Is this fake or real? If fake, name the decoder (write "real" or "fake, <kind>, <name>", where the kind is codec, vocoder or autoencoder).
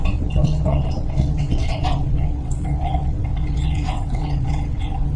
fake, vocoder, WaveNeXt